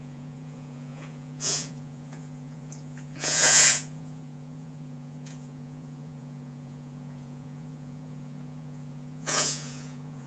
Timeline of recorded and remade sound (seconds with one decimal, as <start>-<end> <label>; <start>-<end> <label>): 0.0-10.3 remade